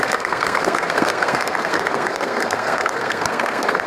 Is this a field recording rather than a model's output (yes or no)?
no